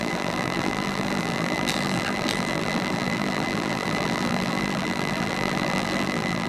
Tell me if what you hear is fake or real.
fake